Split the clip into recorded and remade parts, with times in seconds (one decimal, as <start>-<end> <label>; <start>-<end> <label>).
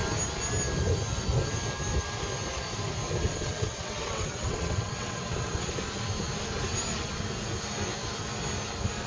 0.0-3.3 recorded; 3.3-5.7 remade; 5.7-9.1 recorded